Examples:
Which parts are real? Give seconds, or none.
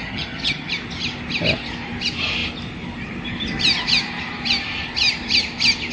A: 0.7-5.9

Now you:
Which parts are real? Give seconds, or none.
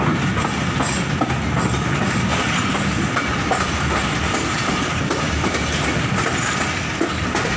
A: 0.0-7.6